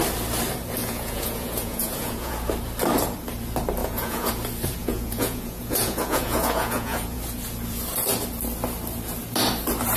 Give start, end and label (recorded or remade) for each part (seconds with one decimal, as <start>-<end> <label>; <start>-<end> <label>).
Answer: 0.0-0.8 recorded; 0.8-2.3 remade; 2.3-3.8 recorded; 3.8-4.3 remade; 4.3-4.8 recorded; 4.8-7.2 remade; 7.2-10.0 recorded

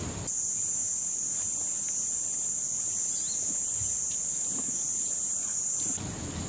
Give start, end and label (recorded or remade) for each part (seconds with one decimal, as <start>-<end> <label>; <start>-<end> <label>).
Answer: 0.0-6.5 recorded

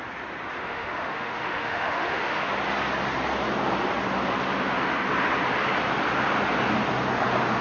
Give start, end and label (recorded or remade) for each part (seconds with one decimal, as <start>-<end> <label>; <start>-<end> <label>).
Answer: 0.0-0.5 recorded; 0.5-2.5 remade; 2.5-7.6 recorded

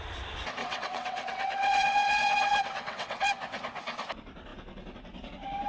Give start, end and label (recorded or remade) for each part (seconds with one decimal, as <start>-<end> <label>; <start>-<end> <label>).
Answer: 0.0-0.6 recorded; 0.6-3.3 remade; 3.3-5.7 recorded

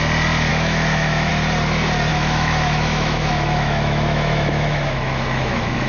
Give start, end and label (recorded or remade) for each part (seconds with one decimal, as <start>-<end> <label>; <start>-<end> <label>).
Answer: 0.0-0.5 recorded; 0.5-1.3 remade; 1.3-2.1 recorded; 2.1-5.9 remade

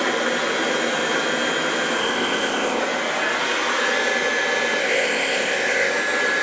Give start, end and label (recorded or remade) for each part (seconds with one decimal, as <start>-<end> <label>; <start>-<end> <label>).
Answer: 0.0-2.0 recorded; 2.0-2.8 remade; 2.8-4.8 recorded; 4.8-5.9 remade; 5.9-6.4 recorded